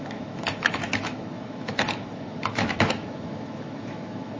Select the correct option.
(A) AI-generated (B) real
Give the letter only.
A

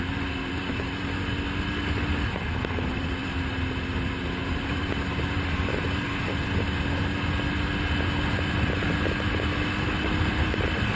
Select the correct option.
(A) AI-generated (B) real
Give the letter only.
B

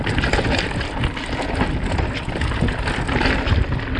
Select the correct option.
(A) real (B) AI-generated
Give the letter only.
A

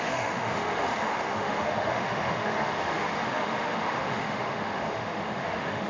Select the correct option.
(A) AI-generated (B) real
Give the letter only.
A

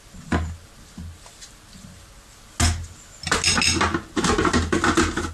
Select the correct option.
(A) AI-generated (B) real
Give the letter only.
B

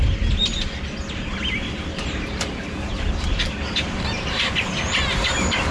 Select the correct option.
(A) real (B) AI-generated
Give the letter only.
A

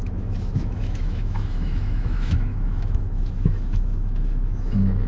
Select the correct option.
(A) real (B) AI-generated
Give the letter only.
B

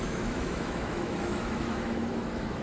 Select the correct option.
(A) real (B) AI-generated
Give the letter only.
B